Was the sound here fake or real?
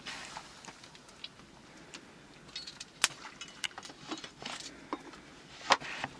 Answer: real